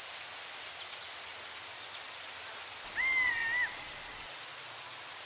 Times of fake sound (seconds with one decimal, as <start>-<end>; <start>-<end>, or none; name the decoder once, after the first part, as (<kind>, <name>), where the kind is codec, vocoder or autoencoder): 0.0-3.4 (vocoder, BigVGAN v2)